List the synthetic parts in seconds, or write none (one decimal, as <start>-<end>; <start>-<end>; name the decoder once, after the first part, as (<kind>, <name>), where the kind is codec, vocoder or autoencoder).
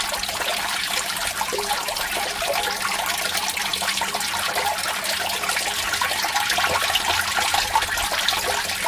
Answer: 0.5-2.5 (vocoder, BigVGAN v2)